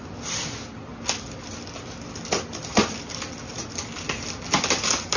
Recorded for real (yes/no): yes